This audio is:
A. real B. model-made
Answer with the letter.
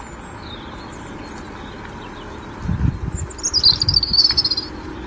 A